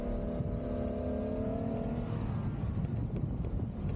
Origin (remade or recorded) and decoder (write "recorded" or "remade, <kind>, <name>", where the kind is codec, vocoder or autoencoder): recorded